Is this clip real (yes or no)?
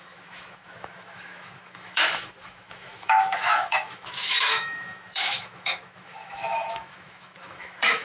no